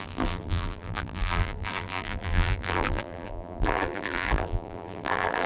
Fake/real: fake